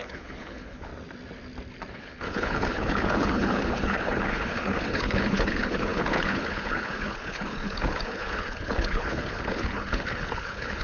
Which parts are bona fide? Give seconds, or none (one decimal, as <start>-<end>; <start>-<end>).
0.9-1.9